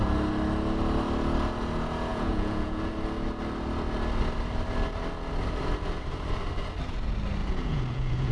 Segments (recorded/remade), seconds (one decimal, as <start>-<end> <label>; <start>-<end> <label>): 0.0-2.1 recorded; 2.1-2.9 remade; 2.9-7.4 recorded; 7.4-8.3 remade